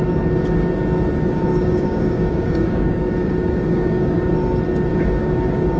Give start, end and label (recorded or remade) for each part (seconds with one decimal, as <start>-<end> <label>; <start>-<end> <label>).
0.0-1.5 recorded; 1.5-4.3 remade; 4.3-4.9 recorded; 4.9-5.8 remade